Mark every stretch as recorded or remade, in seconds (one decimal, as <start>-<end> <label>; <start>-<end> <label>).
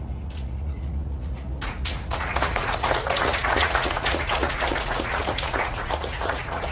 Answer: 0.0-6.7 remade